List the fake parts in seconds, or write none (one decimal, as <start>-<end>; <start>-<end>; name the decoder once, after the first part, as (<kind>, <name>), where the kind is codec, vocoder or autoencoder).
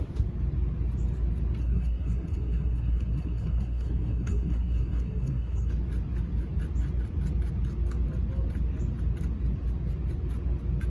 1.6-5.7 (codec, SNAC)